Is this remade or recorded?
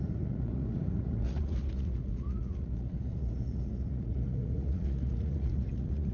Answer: remade